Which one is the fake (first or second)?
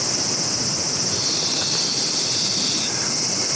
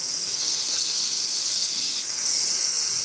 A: second